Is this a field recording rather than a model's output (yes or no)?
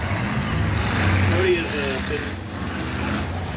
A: yes